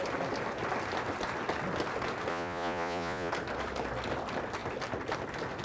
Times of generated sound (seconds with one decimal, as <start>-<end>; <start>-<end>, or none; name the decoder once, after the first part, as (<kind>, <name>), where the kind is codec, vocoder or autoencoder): 2.3-3.3 (vocoder, Vocos)